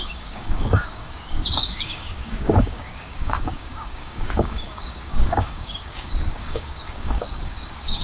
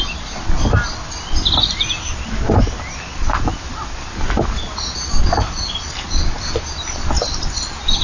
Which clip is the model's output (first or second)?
first